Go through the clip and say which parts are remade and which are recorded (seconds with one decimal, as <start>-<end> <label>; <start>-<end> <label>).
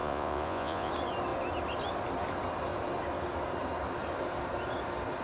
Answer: 0.0-0.9 remade; 0.9-5.2 recorded